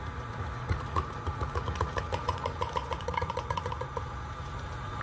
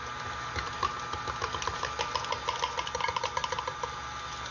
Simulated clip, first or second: first